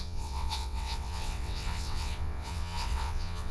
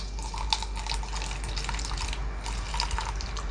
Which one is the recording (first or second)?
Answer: second